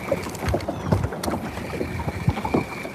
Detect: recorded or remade recorded